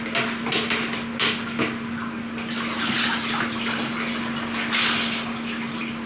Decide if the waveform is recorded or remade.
recorded